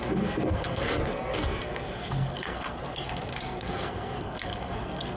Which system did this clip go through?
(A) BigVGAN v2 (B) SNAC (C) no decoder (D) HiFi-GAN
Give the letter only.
B